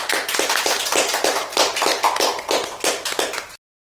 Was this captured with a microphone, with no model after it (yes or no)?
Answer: yes